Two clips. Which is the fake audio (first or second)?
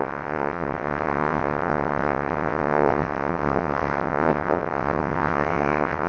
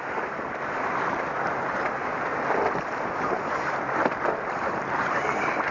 first